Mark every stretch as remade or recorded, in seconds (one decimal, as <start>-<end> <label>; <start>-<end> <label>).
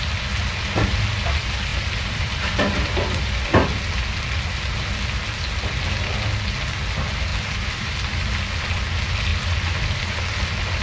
0.0-1.7 recorded; 1.7-4.2 remade; 4.2-7.3 recorded; 7.3-8.6 remade; 8.6-9.3 recorded; 9.3-10.8 remade